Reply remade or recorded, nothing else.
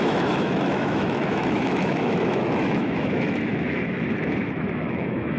remade